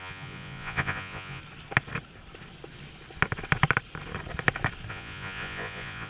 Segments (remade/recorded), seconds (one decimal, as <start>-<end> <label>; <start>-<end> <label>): 0.0-1.4 remade; 1.4-4.9 recorded; 4.9-6.1 remade